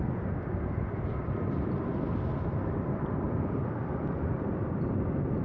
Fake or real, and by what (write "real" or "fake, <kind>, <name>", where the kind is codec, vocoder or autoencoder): real